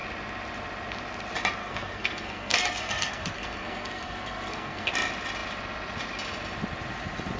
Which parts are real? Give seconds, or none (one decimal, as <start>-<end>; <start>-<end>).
0.0-1.6; 4.9-7.4